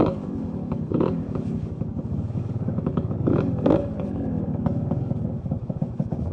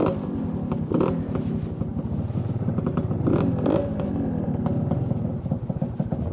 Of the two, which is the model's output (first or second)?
first